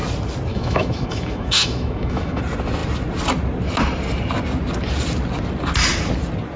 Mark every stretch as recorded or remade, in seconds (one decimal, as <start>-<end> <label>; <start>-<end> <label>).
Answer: 0.0-0.5 recorded; 0.5-2.4 remade; 2.4-6.6 recorded